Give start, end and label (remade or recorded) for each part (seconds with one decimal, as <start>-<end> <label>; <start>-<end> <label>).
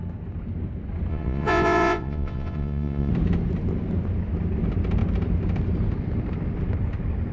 0.0-1.1 recorded; 1.1-3.1 remade; 3.1-7.3 recorded